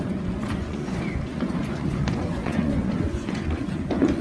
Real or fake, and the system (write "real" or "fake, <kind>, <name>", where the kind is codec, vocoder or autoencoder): fake, vocoder, Vocos